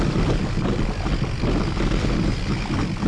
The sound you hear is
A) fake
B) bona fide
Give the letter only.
B